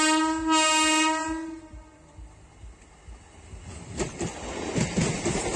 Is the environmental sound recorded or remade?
recorded